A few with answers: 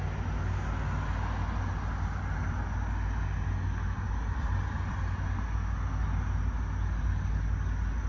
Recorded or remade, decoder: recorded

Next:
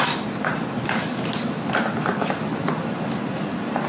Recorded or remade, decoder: recorded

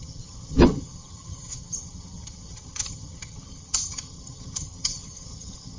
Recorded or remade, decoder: remade, vocoder, HiFi-GAN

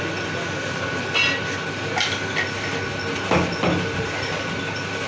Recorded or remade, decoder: recorded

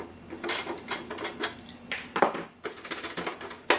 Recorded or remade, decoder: recorded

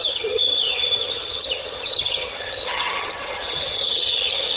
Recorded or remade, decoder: remade, vocoder, HiFi-GAN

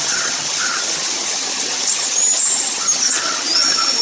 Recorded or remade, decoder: remade, vocoder, HiFi-GAN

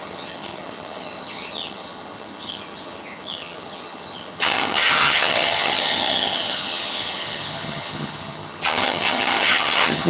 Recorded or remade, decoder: remade, vocoder, HiFi-GAN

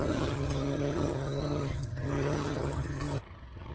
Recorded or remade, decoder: remade, vocoder, HiFi-GAN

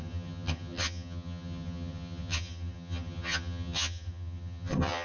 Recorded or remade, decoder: remade, vocoder, HiFi-GAN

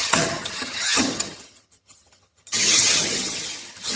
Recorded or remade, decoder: remade, vocoder, HiFi-GAN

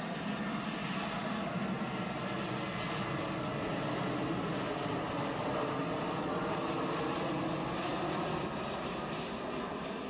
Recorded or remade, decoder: recorded